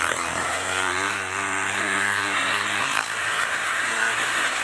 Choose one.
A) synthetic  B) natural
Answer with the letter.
A